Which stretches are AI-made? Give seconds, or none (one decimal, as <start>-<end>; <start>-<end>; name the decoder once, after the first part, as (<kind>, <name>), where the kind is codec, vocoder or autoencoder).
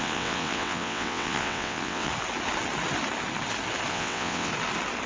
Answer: 0.0-2.1 (vocoder, WaveNeXt); 3.9-4.5